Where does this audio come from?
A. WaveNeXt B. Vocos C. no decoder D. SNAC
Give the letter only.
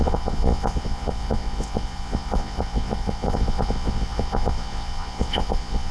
B